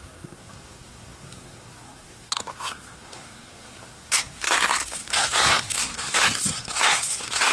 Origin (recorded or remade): remade